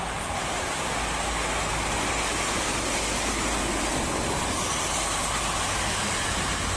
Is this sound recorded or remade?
recorded